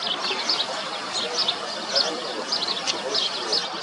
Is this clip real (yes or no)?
yes